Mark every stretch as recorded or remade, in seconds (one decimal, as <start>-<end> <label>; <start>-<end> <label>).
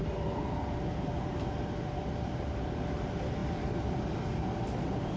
0.0-5.2 recorded